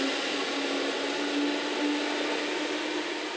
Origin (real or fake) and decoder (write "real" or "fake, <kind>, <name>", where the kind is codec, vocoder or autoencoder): real